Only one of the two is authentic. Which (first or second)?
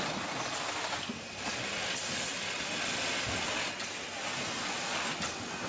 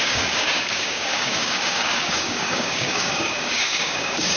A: first